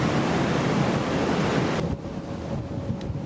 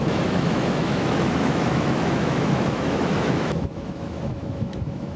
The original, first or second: first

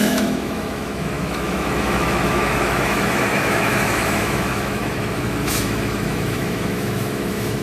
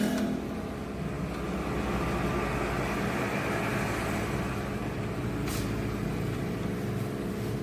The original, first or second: second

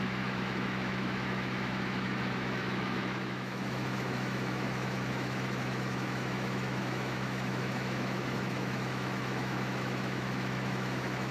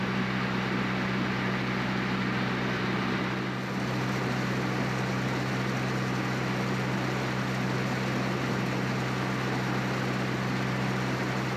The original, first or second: second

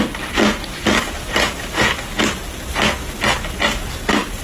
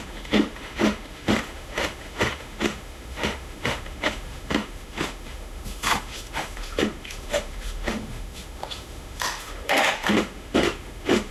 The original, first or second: first